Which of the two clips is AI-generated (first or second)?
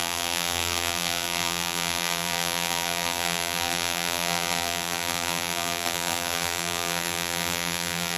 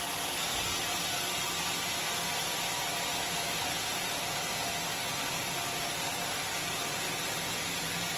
first